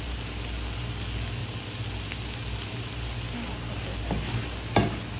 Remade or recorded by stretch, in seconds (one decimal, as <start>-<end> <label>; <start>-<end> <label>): 0.0-5.2 recorded